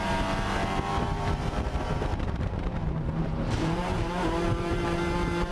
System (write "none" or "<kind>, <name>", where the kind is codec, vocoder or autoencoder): vocoder, BigVGAN v2